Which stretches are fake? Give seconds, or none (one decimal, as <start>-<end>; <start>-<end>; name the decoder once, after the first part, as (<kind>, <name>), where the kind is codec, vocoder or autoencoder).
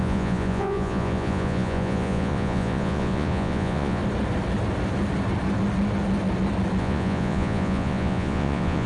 0.0-4.0 (vocoder, Vocos); 6.8-8.9